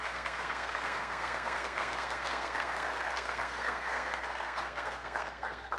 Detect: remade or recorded remade